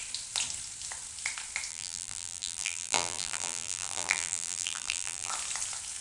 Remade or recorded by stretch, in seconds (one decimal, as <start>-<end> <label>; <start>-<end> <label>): 0.0-1.7 recorded; 1.7-5.3 remade; 5.3-6.0 recorded